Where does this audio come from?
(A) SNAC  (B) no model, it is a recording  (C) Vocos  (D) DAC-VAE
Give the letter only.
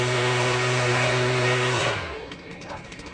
A